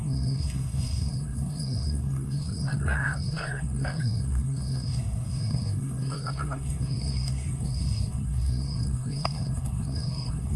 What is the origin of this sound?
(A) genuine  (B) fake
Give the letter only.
B